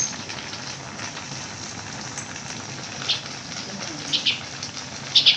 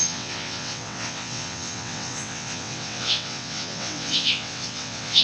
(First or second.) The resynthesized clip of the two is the second